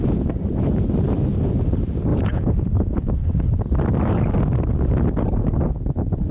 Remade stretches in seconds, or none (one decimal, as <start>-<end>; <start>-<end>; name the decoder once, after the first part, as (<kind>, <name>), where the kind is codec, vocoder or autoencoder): 2.1-3.0 (vocoder, Vocos)